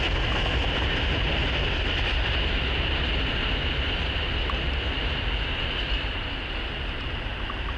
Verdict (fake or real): real